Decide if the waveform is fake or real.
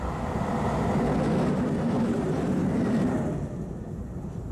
real